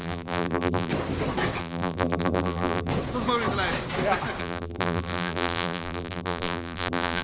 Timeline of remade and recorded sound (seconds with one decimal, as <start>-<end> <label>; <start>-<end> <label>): 0.0-0.9 remade; 0.9-1.6 recorded; 1.6-2.9 remade; 2.9-4.4 recorded; 4.4-7.2 remade

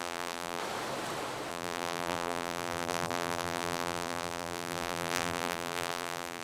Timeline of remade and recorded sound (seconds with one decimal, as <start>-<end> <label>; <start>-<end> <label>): 0.0-0.6 remade; 0.6-1.5 recorded; 1.5-6.4 remade

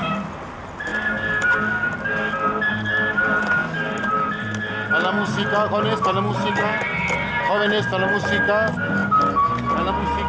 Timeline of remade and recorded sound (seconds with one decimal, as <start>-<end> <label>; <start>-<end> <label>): 0.0-10.3 recorded

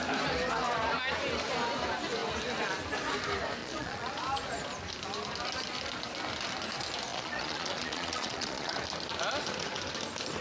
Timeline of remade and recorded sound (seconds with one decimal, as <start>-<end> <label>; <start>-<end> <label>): 0.0-3.6 recorded; 3.6-4.1 remade; 4.1-7.1 recorded; 7.1-8.7 remade; 8.7-10.4 recorded

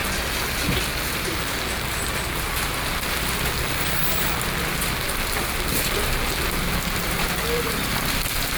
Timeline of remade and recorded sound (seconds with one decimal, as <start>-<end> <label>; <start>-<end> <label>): 0.0-8.6 recorded